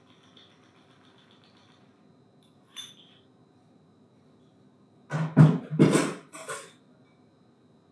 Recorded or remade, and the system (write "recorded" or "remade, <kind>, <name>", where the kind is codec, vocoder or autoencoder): recorded